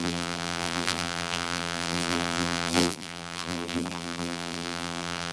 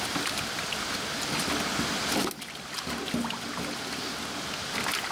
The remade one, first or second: first